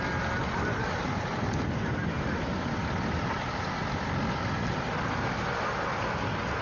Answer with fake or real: real